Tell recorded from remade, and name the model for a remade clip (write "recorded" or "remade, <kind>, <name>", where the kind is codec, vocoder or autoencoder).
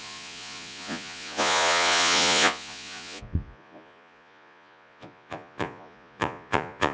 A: remade, vocoder, Vocos